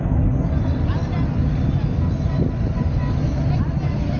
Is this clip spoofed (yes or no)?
no